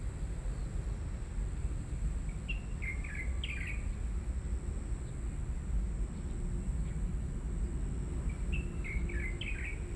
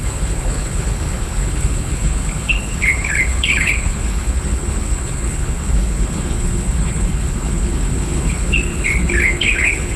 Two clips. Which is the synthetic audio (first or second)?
second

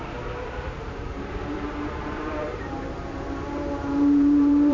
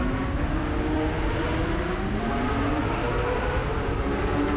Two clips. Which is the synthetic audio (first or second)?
first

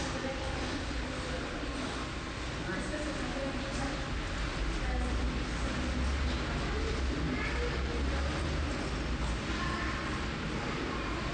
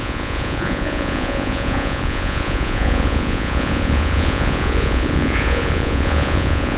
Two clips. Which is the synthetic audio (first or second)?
second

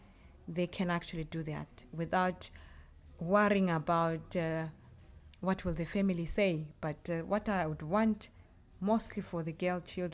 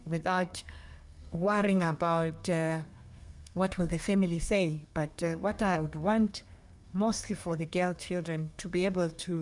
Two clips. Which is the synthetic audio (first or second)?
second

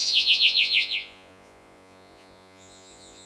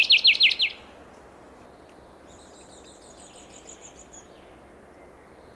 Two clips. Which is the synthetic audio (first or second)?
first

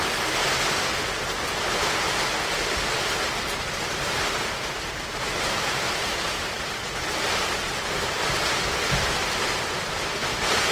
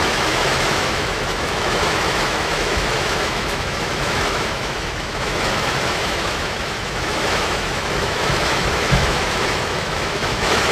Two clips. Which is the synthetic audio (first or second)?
second